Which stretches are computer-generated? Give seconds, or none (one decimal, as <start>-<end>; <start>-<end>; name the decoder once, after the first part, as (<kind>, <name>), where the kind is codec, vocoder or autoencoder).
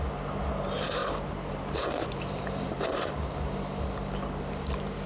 1.0-3.3 (vocoder, BigVGAN v2)